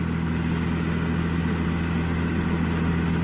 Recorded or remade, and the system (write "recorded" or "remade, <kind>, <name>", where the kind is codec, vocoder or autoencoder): recorded